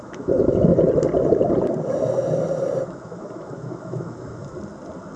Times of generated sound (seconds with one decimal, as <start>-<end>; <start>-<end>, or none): 0.0-0.7; 2.8-4.4